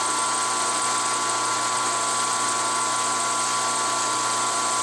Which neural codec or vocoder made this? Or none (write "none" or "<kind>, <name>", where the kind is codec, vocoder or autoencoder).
none